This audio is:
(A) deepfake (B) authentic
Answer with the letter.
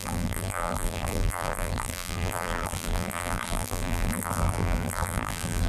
A